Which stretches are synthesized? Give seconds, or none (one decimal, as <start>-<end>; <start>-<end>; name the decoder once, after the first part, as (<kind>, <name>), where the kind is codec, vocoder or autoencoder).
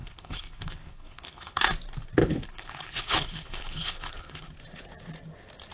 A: 0.0-1.6 (codec, HILCodec); 2.2-4.5